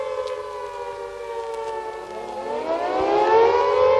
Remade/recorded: recorded